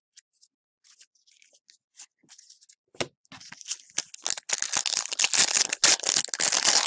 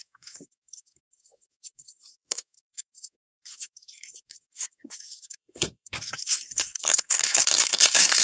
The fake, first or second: second